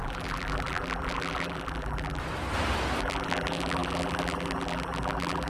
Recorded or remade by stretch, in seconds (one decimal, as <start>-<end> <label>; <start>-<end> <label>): 0.0-2.2 remade; 2.2-3.0 recorded; 3.0-5.5 remade